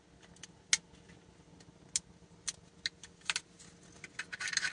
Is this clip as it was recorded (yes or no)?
yes